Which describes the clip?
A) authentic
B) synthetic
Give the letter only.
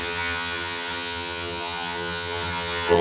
B